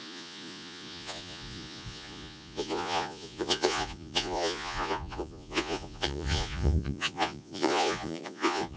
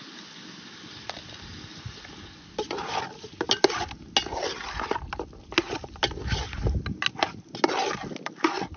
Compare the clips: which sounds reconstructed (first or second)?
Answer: first